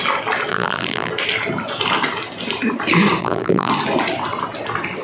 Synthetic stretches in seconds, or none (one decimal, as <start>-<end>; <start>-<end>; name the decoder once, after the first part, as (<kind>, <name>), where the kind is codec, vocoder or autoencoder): 0.5-1.1 (vocoder, BigVGAN v2); 3.2-3.7